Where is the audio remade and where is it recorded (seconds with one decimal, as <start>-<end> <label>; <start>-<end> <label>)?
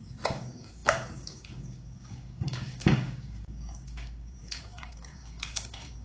0.0-6.0 remade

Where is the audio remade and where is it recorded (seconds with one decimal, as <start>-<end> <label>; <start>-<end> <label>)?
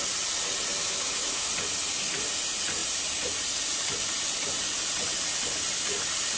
0.0-0.8 recorded; 0.8-1.5 remade; 1.5-6.4 recorded